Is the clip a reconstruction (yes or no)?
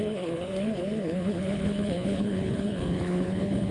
yes